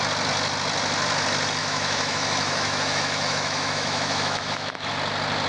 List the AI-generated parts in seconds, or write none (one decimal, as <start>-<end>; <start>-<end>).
1.6-4.9

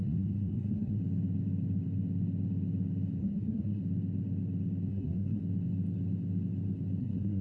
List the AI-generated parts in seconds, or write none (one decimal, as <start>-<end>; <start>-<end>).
0.0-1.0; 3.2-3.8; 4.9-5.4; 7.0-7.4

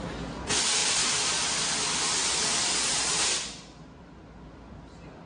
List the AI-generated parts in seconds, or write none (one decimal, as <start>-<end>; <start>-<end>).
none